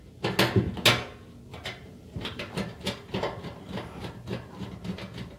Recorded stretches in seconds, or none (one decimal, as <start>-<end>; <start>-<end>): 0.0-1.5; 4.7-5.4